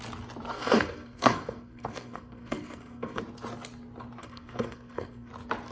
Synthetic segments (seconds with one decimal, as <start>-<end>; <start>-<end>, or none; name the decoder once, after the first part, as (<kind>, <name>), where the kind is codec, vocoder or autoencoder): 0.5-3.2 (codec, SNAC); 4.2-5.3